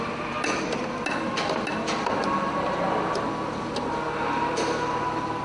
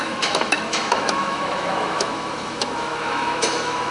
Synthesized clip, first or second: second